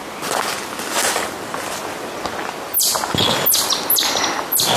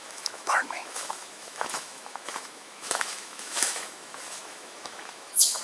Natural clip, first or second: first